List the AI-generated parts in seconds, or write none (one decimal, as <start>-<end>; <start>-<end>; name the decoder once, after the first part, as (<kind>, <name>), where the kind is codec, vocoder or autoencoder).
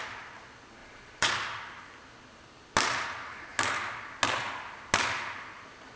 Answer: 0.8-1.3 (vocoder, Vocos)